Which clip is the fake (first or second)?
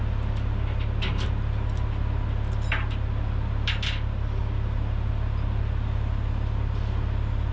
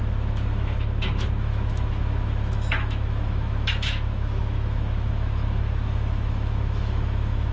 second